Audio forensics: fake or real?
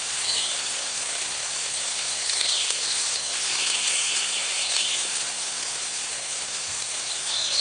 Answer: fake